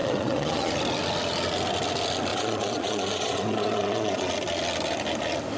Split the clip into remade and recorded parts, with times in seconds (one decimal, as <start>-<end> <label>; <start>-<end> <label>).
0.0-0.7 remade; 0.7-2.3 recorded; 2.3-4.3 remade; 4.3-5.6 recorded